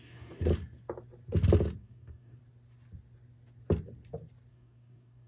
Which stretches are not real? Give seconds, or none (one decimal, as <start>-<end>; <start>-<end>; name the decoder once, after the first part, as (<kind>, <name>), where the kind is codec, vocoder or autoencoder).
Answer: 0.0-0.5 (codec, DAC); 1.8-2.4; 4.5-5.3